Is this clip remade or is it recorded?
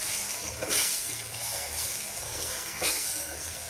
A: remade